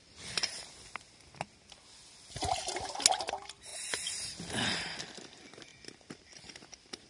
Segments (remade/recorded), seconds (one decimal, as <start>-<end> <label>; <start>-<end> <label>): 0.0-7.1 recorded